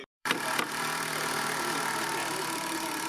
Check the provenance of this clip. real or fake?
fake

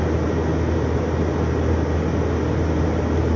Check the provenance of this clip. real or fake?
real